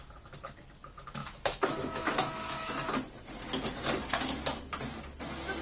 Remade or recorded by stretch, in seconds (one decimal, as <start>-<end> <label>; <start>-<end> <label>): 0.0-1.2 recorded; 1.2-2.7 remade; 2.7-5.6 recorded